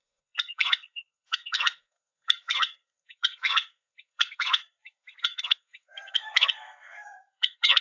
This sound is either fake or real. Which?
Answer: fake